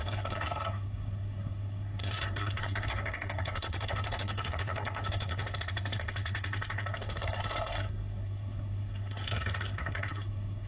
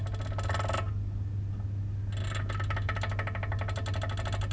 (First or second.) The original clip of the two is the second